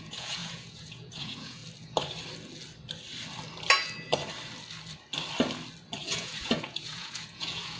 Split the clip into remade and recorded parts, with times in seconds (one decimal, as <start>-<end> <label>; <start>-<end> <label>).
0.0-1.6 remade; 1.6-6.0 recorded; 6.0-7.8 remade